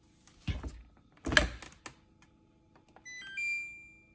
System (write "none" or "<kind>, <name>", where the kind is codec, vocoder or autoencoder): none